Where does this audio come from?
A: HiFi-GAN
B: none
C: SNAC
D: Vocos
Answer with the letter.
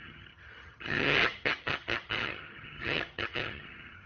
A